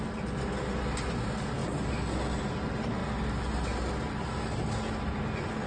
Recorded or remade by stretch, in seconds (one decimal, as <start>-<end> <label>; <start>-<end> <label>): 0.0-5.7 recorded